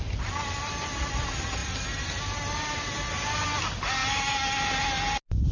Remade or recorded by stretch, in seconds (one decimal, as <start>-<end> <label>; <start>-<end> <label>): 0.0-5.5 recorded